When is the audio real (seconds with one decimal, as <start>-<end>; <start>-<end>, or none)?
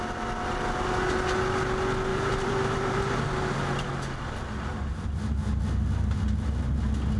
0.0-2.1; 3.2-4.7; 5.6-7.2